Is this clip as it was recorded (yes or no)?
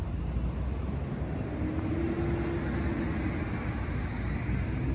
yes